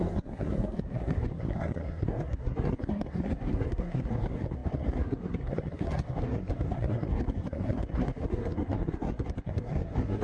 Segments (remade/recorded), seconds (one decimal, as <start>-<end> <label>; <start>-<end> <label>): 0.0-10.2 remade